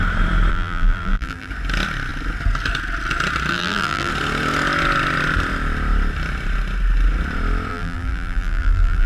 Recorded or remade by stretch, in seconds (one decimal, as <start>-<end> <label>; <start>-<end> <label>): 0.0-0.5 recorded; 0.5-1.5 remade; 1.5-3.5 recorded; 3.5-4.1 remade; 4.1-7.7 recorded; 7.7-9.1 remade